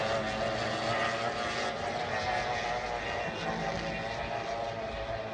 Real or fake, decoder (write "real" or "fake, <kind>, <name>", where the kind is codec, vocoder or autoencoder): real